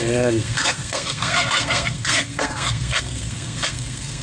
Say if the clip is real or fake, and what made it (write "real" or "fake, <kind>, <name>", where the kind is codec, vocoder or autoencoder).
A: fake, codec, SNAC